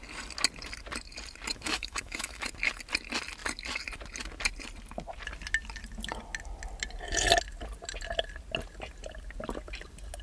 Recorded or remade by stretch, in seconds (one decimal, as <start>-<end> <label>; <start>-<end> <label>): 0.0-1.5 recorded; 1.5-2.5 remade; 2.5-10.2 recorded